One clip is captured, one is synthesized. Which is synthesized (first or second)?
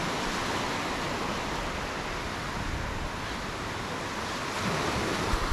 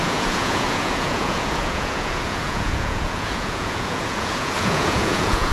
second